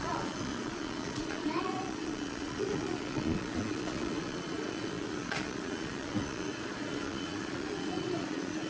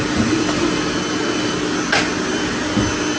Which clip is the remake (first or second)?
first